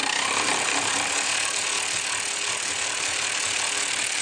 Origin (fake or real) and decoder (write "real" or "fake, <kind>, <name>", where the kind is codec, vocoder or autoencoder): real